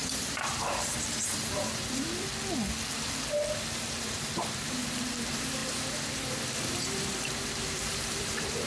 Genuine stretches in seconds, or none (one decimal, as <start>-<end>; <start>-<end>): 2.3-3.6